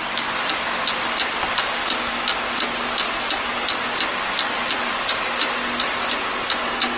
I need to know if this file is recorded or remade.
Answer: recorded